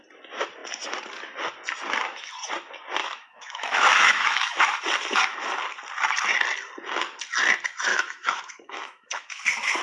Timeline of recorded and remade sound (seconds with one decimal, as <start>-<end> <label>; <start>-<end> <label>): 0.0-3.0 recorded; 3.0-4.6 remade; 4.6-7.9 recorded; 7.9-9.4 remade; 9.4-9.8 recorded